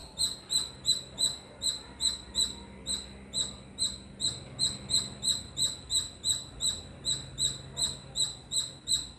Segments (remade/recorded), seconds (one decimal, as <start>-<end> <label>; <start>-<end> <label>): 0.0-9.2 recorded